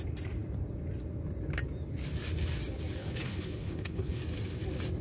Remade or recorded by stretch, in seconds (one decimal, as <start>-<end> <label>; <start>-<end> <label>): 0.0-3.0 recorded; 3.0-4.2 remade; 4.2-5.0 recorded